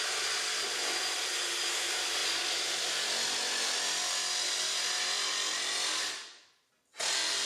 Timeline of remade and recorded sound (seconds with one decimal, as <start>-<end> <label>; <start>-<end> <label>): 0.0-7.5 recorded